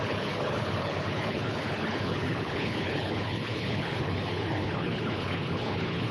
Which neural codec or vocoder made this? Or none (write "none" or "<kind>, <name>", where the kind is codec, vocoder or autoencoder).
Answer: codec, HILCodec